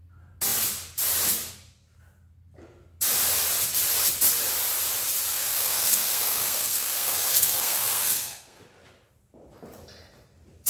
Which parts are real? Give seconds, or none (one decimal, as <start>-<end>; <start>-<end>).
0.0-5.3; 8.6-10.7